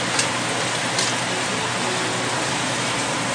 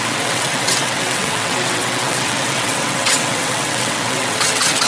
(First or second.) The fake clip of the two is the second